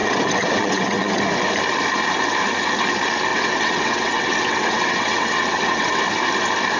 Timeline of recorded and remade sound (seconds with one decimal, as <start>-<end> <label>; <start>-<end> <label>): 0.0-1.2 remade; 1.2-3.3 recorded; 3.3-6.0 remade; 6.0-6.8 recorded